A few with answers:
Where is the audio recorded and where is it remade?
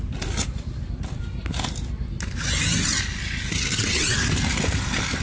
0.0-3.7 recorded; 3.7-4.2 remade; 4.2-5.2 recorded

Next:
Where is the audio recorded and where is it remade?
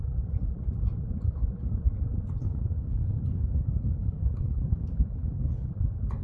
0.0-2.4 recorded; 2.4-5.7 remade; 5.7-6.2 recorded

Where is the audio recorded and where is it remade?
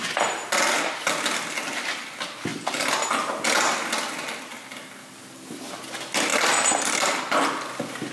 0.0-8.1 recorded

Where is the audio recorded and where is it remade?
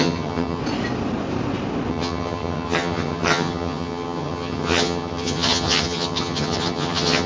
0.0-0.6 remade; 0.6-1.9 recorded; 1.9-7.3 remade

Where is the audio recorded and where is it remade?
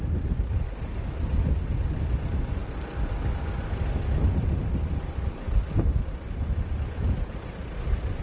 0.0-8.2 recorded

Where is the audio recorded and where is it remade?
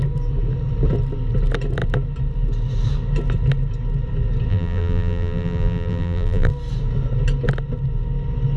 0.0-4.5 recorded; 4.5-6.5 remade; 6.5-8.6 recorded